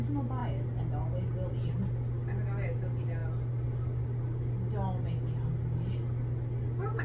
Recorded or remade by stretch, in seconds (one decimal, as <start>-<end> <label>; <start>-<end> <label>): 0.0-7.0 recorded